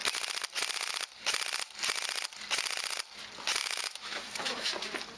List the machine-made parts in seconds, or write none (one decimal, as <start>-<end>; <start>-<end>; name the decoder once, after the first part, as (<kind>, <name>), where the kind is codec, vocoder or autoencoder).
3.6-4.7 (autoencoder, DAC-VAE)

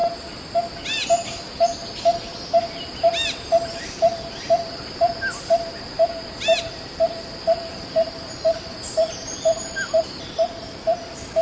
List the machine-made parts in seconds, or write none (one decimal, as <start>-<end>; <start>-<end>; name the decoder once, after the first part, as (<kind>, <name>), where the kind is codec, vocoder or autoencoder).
none

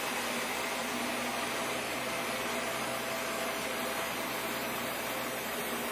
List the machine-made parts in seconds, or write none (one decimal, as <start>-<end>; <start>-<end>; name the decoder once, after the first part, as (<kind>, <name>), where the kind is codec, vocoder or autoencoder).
none